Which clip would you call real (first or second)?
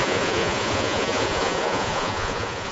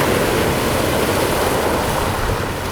second